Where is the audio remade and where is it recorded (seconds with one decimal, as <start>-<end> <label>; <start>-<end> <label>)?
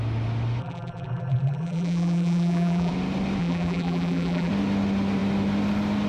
0.0-0.6 recorded; 0.6-2.9 remade; 2.9-3.4 recorded; 3.4-4.5 remade; 4.5-6.1 recorded